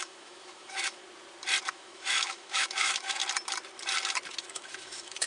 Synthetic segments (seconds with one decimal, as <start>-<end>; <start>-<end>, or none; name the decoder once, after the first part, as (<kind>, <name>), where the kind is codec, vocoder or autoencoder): 0.0-1.0 (autoencoder, DAC-VAE); 1.7-3.2; 4.4-5.3

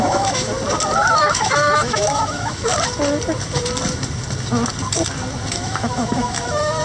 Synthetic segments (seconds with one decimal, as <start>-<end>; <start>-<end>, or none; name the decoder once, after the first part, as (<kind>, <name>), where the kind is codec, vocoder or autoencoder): 0.0-0.5 (autoencoder, DAC-VAE); 1.1-2.7; 5.5-6.8

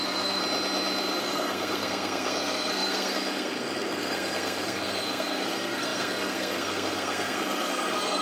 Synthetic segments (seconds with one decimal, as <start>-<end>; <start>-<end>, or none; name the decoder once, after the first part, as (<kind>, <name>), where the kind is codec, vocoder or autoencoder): 0.0-0.4 (codec, SNAC); 1.2-8.2

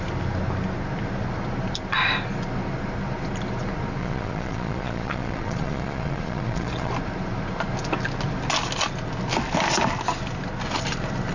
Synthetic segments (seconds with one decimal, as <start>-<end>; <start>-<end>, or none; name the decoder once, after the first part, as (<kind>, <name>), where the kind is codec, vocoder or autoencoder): 4.0-6.9 (vocoder, Vocos)

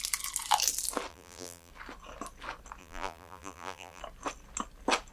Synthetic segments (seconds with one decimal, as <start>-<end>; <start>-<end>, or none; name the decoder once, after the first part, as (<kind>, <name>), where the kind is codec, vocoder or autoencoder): 1.1-1.7 (vocoder, BigVGAN v2); 2.8-4.0

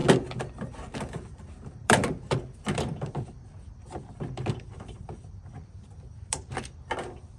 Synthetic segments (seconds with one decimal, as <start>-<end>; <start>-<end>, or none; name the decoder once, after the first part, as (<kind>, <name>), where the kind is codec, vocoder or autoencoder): 1.0-2.0 (vocoder, BigVGAN v2); 2.6-7.4

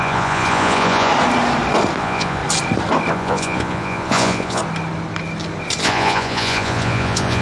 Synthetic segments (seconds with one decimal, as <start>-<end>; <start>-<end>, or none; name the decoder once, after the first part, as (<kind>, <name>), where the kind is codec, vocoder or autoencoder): 0.0-1.1 (vocoder, Vocos); 2.0-2.4; 3.1-4.6; 5.8-7.4